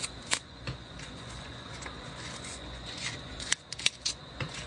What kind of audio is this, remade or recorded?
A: remade